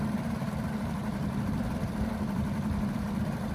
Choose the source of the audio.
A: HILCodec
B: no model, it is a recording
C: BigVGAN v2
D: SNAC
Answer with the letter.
C